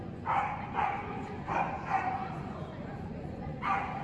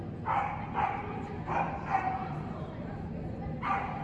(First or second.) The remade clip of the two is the first